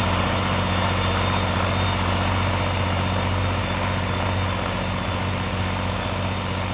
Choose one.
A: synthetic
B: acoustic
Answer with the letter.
B